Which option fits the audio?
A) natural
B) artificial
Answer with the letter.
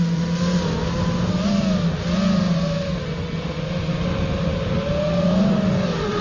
A